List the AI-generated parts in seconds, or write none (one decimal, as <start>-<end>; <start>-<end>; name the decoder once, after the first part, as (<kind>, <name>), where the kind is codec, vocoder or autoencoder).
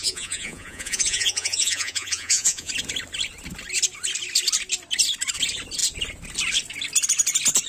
0.0-2.7 (vocoder, Vocos)